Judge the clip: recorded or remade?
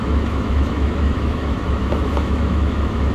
remade